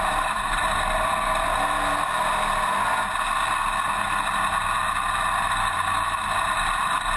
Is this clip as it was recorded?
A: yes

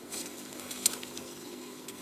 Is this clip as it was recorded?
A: no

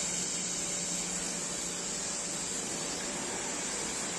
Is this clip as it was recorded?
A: yes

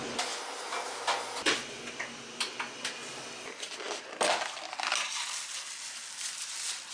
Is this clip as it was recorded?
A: yes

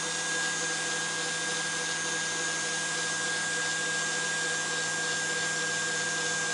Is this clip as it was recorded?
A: yes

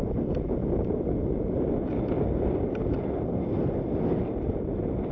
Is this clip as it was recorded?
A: yes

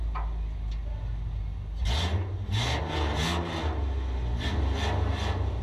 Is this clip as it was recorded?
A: yes